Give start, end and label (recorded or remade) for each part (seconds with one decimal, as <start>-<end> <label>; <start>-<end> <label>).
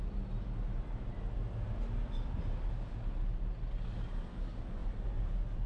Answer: 0.0-5.7 recorded